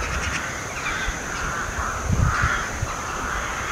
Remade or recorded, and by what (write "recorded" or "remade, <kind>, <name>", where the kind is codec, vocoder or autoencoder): remade, vocoder, BigVGAN v2